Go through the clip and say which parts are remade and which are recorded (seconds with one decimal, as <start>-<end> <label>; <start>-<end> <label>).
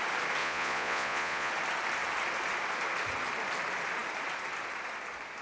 0.0-0.4 recorded; 0.4-1.5 remade; 1.5-5.4 recorded